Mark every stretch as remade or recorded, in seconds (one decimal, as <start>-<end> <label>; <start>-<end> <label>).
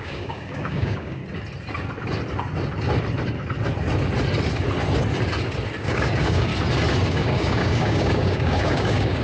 0.0-1.2 remade; 1.2-5.8 recorded; 5.8-6.5 remade; 6.5-7.1 recorded; 7.1-9.2 remade